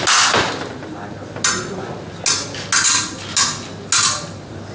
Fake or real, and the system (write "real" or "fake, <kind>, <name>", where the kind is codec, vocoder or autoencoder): real